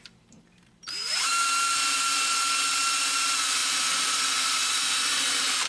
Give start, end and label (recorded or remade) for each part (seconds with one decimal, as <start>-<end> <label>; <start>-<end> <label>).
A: 0.0-1.3 remade; 1.3-2.7 recorded; 2.7-5.7 remade